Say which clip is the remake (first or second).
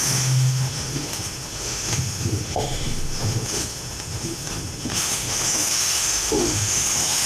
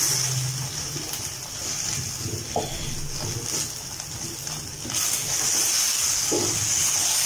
first